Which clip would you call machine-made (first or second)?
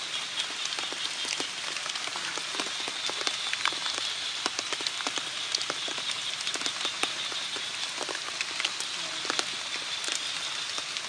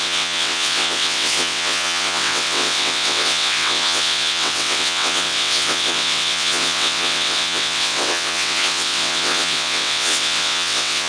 second